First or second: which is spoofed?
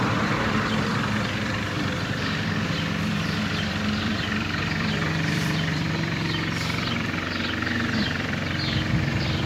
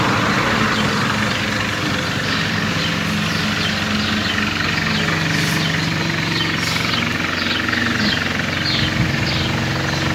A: first